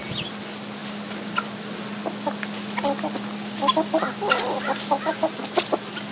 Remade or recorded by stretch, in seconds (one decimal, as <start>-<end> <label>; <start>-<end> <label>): 0.0-6.1 recorded